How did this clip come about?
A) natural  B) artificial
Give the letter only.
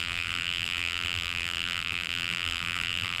B